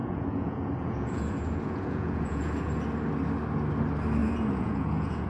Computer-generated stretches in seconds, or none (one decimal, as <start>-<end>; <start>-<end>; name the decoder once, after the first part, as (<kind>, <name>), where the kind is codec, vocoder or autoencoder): 0.0-2.7 (vocoder, Vocos); 4.2-5.3